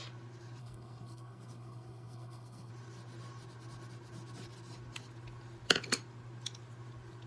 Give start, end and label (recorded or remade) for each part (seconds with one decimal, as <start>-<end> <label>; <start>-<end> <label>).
0.0-0.6 recorded; 0.6-2.7 remade; 2.7-7.3 recorded

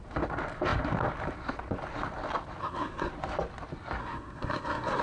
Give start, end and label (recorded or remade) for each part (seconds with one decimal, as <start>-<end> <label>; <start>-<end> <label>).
0.0-2.6 recorded; 2.6-3.1 remade; 3.1-4.0 recorded; 4.0-5.0 remade

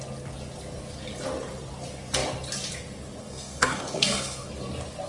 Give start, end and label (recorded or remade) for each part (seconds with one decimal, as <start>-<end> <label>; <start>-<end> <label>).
0.0-3.2 recorded; 3.2-4.5 remade; 4.5-5.1 recorded

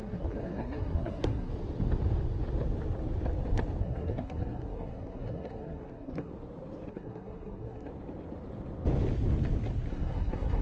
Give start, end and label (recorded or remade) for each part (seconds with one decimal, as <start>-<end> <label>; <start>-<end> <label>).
0.0-1.5 remade; 1.5-3.8 recorded; 3.8-6.3 remade; 6.3-6.9 recorded; 6.9-7.9 remade; 7.9-9.9 recorded; 9.9-10.6 remade

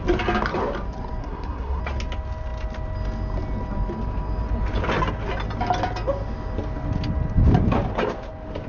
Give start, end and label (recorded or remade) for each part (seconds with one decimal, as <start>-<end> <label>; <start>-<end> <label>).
0.0-1.2 recorded; 1.2-1.8 remade; 1.8-8.7 recorded

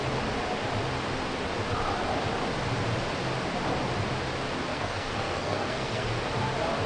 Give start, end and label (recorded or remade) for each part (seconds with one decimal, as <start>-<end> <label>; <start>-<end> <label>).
0.0-4.7 recorded; 4.7-6.1 remade; 6.1-6.9 recorded